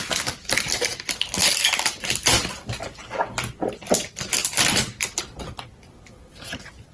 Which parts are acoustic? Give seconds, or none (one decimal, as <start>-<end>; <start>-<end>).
0.0-4.4; 5.2-6.9

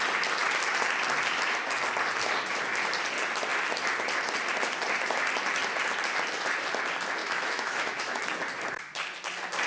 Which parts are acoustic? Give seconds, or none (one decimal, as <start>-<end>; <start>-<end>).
0.0-7.2; 8.2-9.7

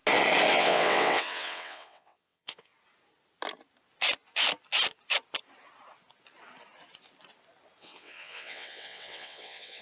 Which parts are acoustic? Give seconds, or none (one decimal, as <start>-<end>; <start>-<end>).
0.0-0.5; 2.7-7.8